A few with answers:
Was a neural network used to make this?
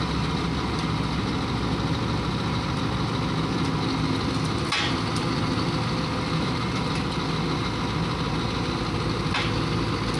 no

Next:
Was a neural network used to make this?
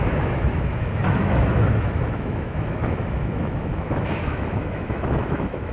yes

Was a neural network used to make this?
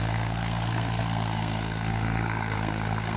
yes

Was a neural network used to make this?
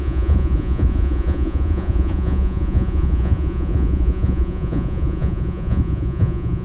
yes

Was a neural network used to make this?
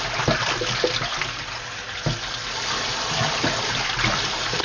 no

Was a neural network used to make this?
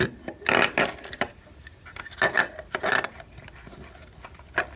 no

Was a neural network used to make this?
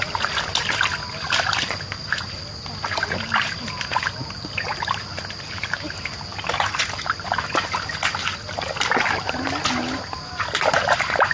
no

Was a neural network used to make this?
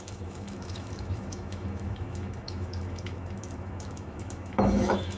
yes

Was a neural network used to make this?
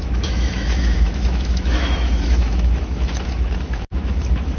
yes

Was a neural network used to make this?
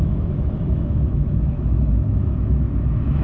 yes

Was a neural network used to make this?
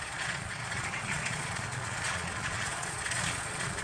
yes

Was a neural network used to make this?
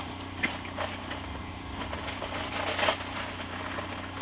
no